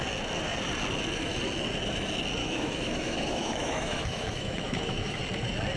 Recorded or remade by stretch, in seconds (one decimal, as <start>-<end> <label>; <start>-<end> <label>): 0.0-2.4 recorded; 2.4-5.2 remade; 5.2-5.8 recorded